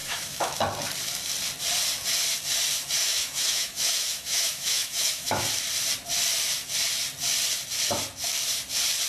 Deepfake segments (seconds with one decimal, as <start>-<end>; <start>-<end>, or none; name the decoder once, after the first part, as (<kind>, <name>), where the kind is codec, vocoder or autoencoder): 0.0-0.6 (autoencoder, DAC-VAE); 3.0-5.4